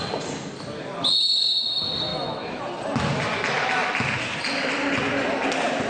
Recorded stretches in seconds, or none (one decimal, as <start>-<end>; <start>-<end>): 0.0-2.1; 2.6-5.9